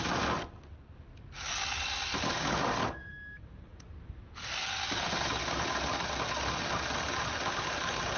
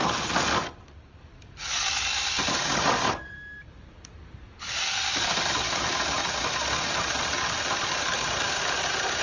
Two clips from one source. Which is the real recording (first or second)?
first